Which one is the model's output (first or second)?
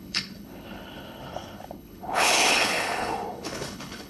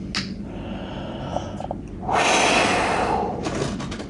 first